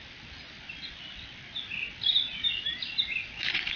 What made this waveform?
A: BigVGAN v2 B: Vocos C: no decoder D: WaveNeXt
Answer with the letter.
C